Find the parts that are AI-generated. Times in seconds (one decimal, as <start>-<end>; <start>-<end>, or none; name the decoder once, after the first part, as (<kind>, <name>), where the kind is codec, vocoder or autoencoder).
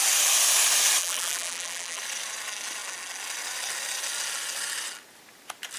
1.0-2.0 (vocoder, BigVGAN v2)